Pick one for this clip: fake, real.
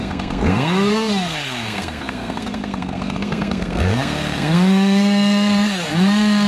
fake